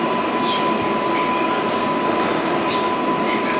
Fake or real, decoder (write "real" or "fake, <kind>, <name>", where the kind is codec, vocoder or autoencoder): real